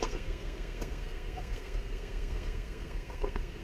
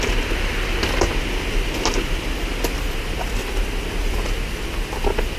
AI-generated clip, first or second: first